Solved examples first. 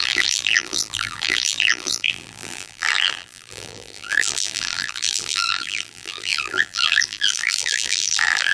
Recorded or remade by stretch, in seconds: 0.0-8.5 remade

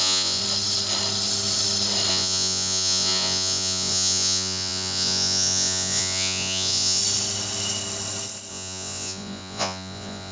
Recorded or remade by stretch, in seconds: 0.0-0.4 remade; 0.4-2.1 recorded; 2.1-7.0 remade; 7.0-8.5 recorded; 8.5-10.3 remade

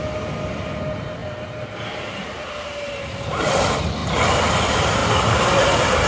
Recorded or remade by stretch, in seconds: 0.0-6.1 recorded

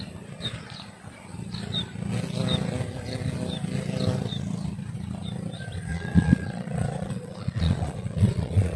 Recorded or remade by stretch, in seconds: 0.0-5.9 recorded; 5.9-8.8 remade